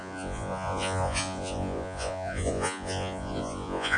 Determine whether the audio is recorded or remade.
remade